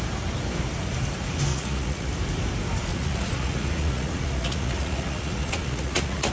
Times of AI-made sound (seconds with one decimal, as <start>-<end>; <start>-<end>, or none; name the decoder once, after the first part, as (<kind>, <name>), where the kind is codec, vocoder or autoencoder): 1.5-2.1 (vocoder, Vocos); 2.9-6.3